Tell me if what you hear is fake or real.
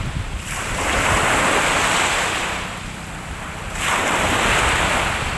real